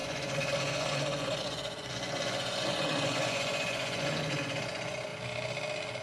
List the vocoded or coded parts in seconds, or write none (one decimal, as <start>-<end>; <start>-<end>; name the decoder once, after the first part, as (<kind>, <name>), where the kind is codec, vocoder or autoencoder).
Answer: 0.0-5.1 (vocoder, Vocos)